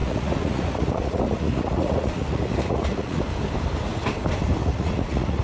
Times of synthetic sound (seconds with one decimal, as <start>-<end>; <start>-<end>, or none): 0.0-3.2; 4.6-5.4